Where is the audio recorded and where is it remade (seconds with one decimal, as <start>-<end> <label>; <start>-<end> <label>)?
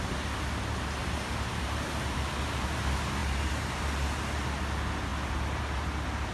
0.0-1.0 recorded; 1.0-2.2 remade; 2.2-3.2 recorded; 3.2-3.8 remade; 3.8-6.3 recorded